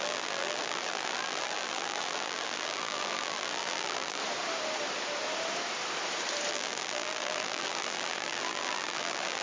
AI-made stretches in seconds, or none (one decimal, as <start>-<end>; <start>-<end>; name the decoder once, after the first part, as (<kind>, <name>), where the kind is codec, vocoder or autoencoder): 0.0-4.2 (vocoder, BigVGAN v2); 6.5-9.4